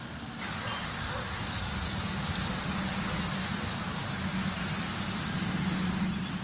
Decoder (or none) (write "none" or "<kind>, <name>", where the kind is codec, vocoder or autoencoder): none